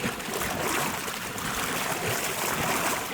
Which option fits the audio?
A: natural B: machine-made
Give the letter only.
A